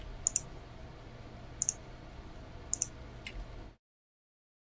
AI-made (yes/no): no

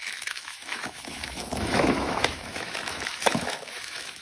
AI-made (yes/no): yes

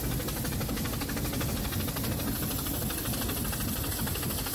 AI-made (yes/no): no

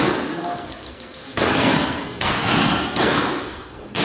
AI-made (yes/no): yes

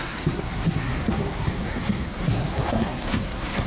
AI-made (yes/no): yes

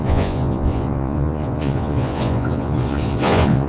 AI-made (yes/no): yes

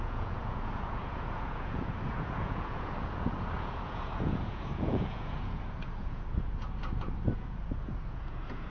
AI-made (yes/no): yes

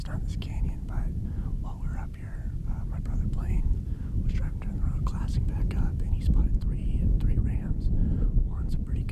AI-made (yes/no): yes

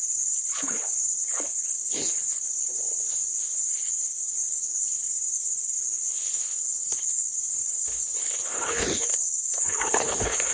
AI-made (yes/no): yes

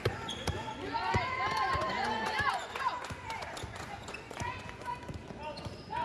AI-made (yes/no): yes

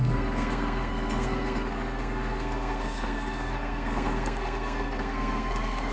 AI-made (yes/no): yes